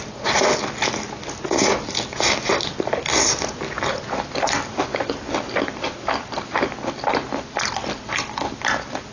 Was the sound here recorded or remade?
recorded